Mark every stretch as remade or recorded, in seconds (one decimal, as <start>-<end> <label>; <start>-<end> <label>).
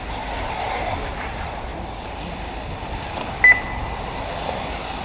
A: 0.0-5.0 recorded